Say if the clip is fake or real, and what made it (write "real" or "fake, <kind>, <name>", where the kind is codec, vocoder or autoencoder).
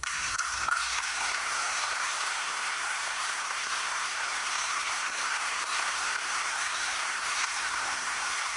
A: fake, codec, SNAC